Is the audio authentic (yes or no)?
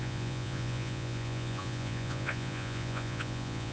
no